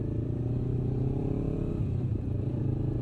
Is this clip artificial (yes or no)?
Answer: yes